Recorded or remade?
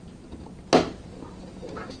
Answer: recorded